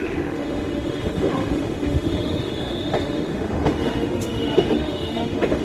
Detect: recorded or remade remade